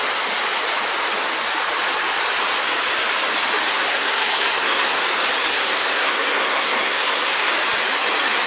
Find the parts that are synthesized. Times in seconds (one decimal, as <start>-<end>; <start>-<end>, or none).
3.7-5.0; 5.5-7.5